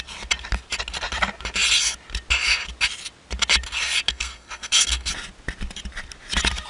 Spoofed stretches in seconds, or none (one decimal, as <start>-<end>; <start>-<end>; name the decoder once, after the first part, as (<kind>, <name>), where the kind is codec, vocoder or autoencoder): 4.1-5.1 (codec, SNAC)